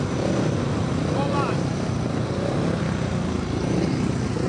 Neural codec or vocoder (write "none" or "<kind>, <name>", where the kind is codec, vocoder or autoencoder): none